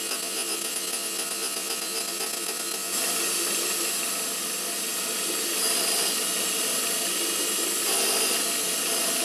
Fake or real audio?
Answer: real